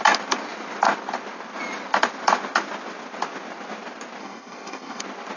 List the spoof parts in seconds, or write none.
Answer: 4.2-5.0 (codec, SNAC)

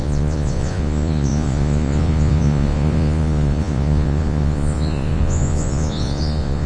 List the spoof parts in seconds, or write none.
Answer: 0.0-6.7 (vocoder, Vocos)

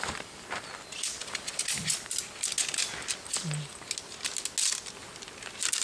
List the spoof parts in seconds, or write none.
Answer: none

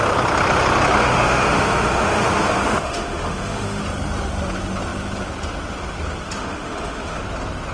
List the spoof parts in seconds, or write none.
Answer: 1.0-3.8 (autoencoder, DAC-VAE); 6.4-7.2

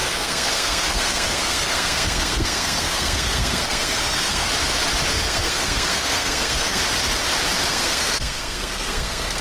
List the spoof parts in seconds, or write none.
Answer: 0.0-4.5 (codec, SNAC); 5.1-6.8; 7.7-9.4